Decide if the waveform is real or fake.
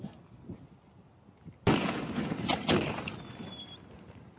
real